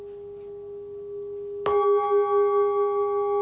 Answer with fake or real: real